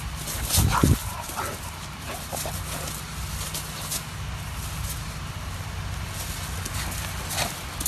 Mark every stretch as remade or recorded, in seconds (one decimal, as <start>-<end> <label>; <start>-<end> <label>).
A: 0.0-1.0 recorded; 1.0-2.5 remade; 2.5-7.9 recorded